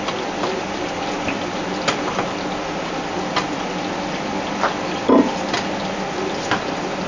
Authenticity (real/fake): real